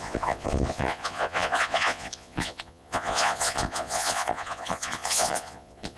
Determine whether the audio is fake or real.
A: fake